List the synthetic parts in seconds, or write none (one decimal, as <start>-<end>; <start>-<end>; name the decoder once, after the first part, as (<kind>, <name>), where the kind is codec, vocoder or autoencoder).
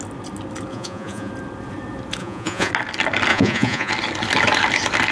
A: 0.7-1.3 (vocoder, Vocos); 2.2-2.7; 3.3-3.9